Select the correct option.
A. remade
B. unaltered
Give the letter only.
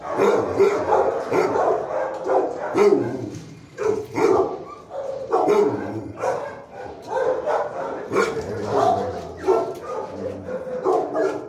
B